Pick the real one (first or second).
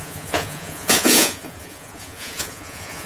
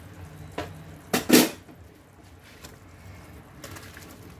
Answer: second